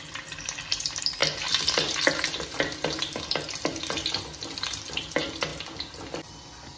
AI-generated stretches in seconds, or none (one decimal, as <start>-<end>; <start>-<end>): none